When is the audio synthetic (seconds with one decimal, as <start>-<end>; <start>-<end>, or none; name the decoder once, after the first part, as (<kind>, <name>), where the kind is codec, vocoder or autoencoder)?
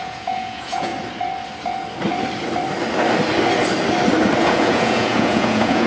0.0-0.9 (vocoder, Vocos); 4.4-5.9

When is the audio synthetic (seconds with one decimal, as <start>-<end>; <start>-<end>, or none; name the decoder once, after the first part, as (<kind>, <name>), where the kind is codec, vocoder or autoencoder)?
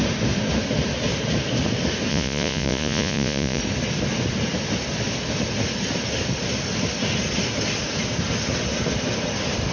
2.1-3.6 (vocoder, Vocos)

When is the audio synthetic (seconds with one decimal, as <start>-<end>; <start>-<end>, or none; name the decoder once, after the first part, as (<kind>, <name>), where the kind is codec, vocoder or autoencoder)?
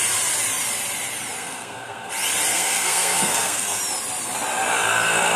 1.4-2.1 (codec, SNAC); 2.5-3.8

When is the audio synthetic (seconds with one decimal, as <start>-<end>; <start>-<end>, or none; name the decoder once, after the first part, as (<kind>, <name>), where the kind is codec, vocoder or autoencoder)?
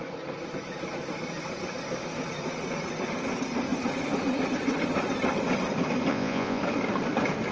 6.1-6.6 (vocoder, Vocos)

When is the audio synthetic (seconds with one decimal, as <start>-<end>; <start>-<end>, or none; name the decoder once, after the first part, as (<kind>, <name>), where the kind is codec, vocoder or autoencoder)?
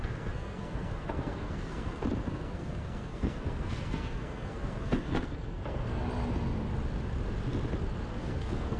0.0-6.0 (codec, SNAC); 8.1-8.8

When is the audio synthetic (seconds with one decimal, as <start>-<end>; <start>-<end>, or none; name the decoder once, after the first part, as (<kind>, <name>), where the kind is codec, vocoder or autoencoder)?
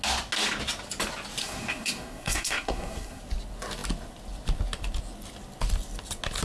1.4-3.2 (codec, SNAC)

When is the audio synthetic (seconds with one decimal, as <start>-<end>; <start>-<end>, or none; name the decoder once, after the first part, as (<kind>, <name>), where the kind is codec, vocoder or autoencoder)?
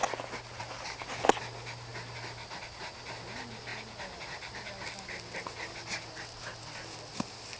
none